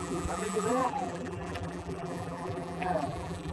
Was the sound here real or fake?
fake